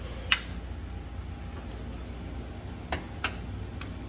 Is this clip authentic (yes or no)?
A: yes